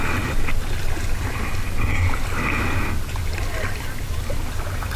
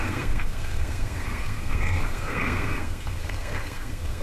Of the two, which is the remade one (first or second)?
second